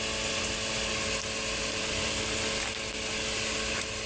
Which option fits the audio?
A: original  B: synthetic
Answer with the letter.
A